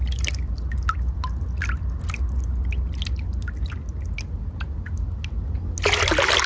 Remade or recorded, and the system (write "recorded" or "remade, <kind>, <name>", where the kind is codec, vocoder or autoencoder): recorded